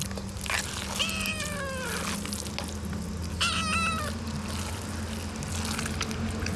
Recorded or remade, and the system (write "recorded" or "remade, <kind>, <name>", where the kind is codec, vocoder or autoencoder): recorded